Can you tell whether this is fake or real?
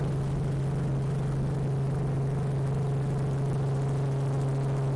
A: real